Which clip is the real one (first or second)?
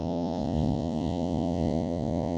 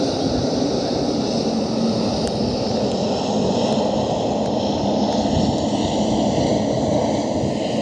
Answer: second